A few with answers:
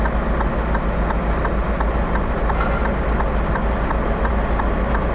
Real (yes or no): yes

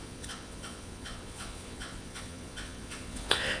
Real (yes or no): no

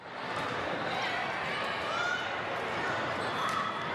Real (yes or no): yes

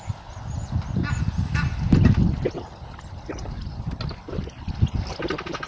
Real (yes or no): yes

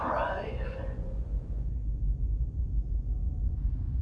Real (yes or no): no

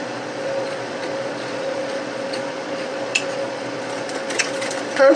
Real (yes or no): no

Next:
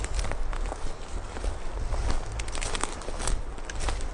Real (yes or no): yes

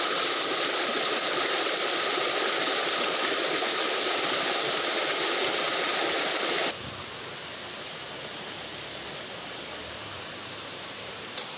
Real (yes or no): yes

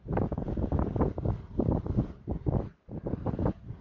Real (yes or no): yes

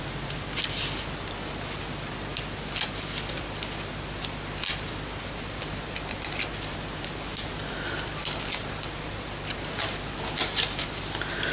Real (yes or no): yes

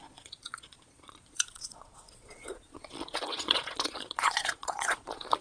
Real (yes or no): no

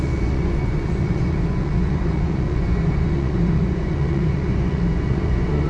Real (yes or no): no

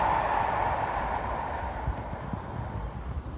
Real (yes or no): yes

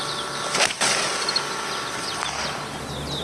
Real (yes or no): yes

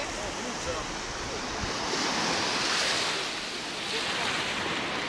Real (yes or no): yes